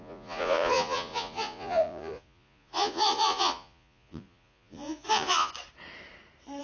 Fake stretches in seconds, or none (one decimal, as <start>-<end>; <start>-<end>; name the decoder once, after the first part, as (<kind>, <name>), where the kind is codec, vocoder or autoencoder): 0.0-5.5 (vocoder, Vocos)